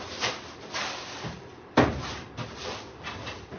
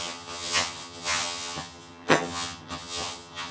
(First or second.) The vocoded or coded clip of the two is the second